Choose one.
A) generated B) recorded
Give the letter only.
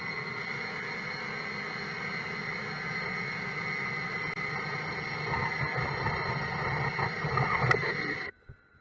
B